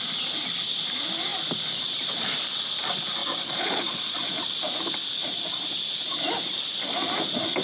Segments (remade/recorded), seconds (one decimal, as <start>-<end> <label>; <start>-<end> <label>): 0.0-3.2 recorded; 3.2-4.2 remade; 4.2-7.6 recorded